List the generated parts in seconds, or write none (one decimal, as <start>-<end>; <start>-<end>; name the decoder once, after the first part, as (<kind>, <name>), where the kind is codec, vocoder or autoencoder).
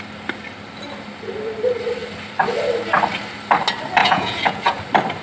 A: 4.0-4.8 (vocoder, Vocos)